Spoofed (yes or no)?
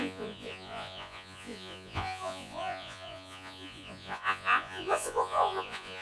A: yes